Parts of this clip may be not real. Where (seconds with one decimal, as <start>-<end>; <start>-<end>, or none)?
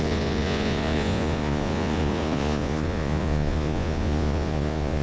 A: 0.0-5.0